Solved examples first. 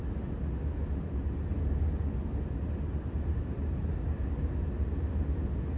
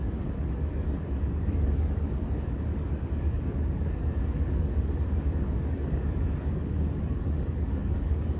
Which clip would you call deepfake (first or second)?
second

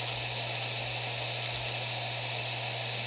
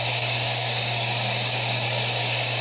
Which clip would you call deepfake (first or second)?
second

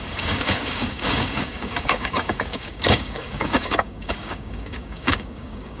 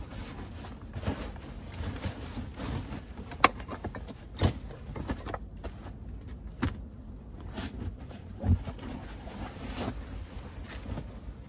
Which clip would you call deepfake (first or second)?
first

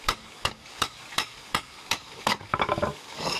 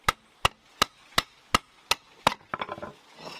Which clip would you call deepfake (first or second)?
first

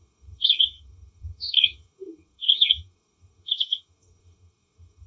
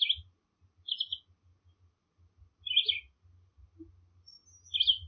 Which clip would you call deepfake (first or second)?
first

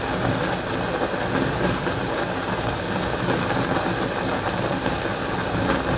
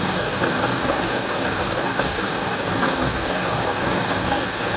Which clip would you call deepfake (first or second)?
second